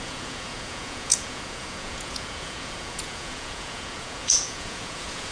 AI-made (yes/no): yes